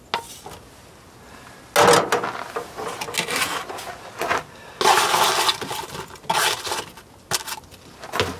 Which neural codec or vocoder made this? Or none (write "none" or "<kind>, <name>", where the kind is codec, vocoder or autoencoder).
none